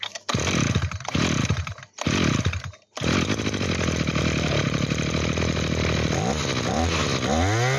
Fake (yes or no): no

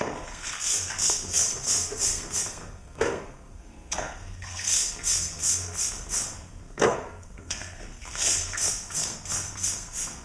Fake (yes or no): yes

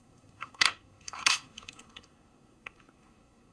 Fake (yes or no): yes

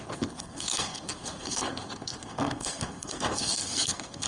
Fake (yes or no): yes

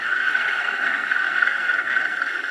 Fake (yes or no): yes